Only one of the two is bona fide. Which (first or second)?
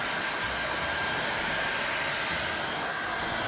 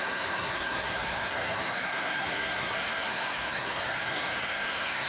first